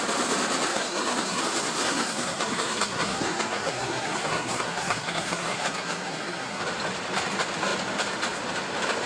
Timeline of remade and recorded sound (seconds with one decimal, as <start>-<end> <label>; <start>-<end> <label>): 0.0-0.7 recorded; 0.7-1.4 remade; 1.4-1.8 recorded; 1.8-6.6 remade; 6.6-9.1 recorded